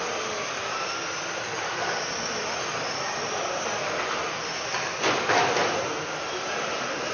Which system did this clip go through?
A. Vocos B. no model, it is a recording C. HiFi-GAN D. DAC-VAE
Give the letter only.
B